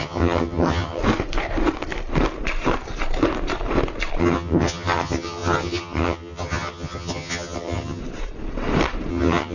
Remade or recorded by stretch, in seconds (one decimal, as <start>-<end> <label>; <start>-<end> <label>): 0.0-1.0 remade; 1.0-4.2 recorded; 4.2-8.0 remade; 8.0-9.1 recorded; 9.1-9.5 remade